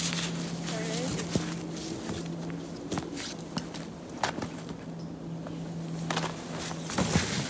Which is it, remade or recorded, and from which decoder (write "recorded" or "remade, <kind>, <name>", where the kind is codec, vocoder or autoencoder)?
recorded